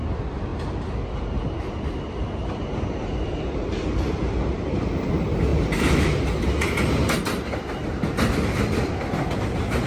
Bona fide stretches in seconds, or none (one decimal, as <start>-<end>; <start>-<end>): 0.0-9.9